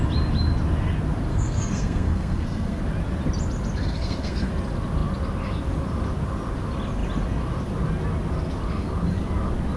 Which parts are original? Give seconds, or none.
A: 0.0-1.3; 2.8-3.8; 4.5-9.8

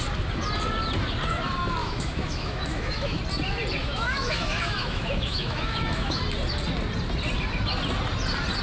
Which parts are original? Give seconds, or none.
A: 0.0-1.8; 3.2-3.8; 6.2-8.6

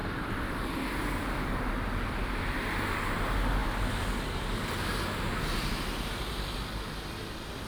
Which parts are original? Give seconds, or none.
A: 0.6-3.6; 4.1-7.7

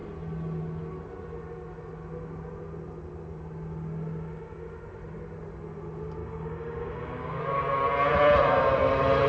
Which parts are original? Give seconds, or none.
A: 0.0-6.2; 7.4-9.3

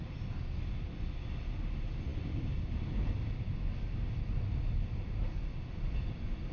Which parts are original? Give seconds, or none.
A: 0.0-6.5

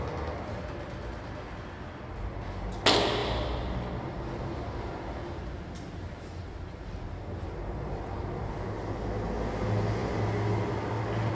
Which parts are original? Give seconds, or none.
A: 0.0-3.2; 8.5-11.3